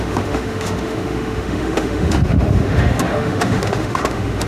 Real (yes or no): no